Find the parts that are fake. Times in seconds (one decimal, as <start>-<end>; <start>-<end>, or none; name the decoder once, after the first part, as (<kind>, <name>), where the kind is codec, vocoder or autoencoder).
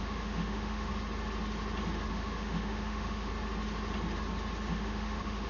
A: 0.0-0.9 (autoencoder, DAC-VAE); 2.1-3.3; 4.7-5.5